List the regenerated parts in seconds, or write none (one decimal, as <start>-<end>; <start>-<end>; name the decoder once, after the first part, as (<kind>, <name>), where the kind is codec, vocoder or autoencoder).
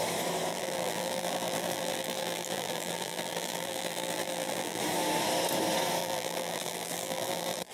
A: 0.5-4.8 (vocoder, BigVGAN v2); 6.0-7.7